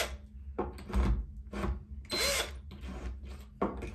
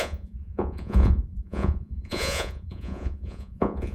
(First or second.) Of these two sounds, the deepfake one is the second